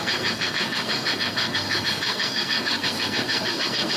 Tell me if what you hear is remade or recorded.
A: remade